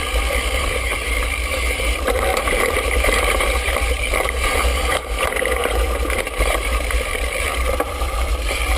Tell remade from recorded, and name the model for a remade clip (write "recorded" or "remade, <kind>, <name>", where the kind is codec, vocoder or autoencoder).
remade, vocoder, BigVGAN v2